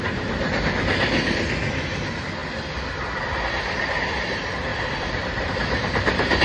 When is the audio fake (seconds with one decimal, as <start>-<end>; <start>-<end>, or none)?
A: 4.7-6.4